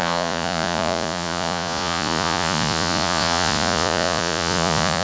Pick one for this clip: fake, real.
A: fake